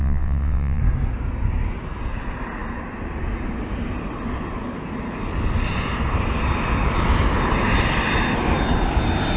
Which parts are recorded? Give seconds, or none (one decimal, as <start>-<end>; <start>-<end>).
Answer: 0.8-9.4